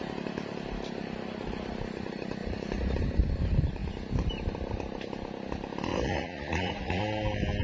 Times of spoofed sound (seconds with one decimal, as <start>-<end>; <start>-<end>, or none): 2.4-3.0; 5.9-7.0